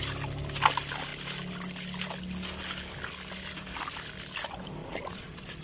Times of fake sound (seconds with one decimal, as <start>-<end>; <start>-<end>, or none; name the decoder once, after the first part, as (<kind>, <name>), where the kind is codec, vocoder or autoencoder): 4.8-5.6 (vocoder, Vocos)